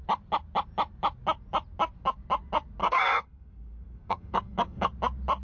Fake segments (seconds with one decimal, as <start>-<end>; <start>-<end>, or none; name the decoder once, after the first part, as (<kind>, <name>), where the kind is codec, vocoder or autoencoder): 2.8-4.9 (codec, SNAC)